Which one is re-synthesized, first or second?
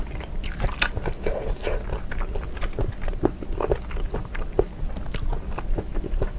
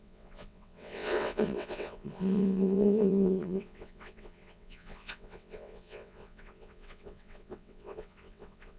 second